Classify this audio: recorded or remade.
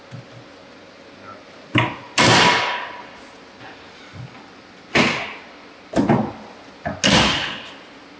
recorded